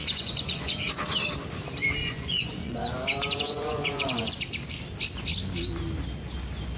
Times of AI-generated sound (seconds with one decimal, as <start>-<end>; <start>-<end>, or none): 0.0-0.9; 2.0-4.3